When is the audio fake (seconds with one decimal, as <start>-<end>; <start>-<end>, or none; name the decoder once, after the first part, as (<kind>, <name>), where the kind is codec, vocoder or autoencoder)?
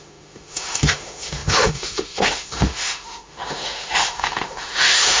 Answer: 0.0-5.2 (autoencoder, DAC-VAE)